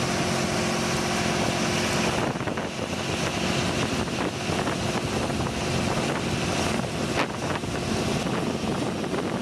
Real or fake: real